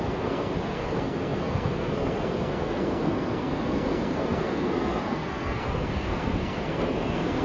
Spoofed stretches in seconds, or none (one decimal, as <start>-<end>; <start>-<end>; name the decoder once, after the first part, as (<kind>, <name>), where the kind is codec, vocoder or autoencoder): 0.0-7.4 (codec, SNAC)

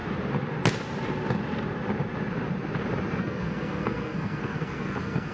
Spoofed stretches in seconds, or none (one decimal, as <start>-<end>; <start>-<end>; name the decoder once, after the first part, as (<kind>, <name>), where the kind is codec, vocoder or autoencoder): 3.2-5.3 (codec, SNAC)